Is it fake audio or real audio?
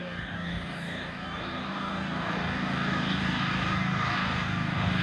fake